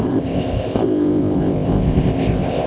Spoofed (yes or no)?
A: yes